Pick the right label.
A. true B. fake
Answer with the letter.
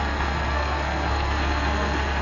B